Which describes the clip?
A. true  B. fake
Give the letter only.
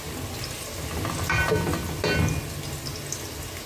A